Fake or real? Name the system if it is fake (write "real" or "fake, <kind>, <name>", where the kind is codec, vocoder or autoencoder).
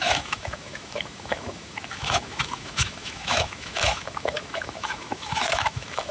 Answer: fake, autoencoder, DAC-VAE